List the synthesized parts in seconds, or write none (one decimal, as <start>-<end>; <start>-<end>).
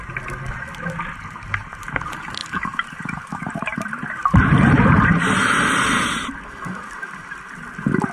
2.4-6.3